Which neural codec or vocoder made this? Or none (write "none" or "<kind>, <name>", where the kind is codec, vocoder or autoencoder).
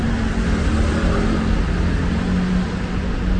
none